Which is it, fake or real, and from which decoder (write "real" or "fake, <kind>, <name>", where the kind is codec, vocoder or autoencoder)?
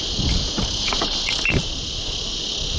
real